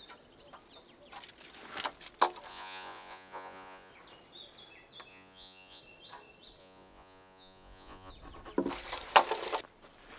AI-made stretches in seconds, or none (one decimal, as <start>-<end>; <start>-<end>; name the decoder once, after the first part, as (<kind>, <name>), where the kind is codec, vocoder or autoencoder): 2.5-3.9 (vocoder, Vocos); 5.1-5.8; 6.6-8.1